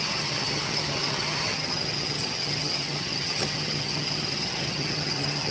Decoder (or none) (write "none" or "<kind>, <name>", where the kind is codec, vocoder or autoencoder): vocoder, HiFi-GAN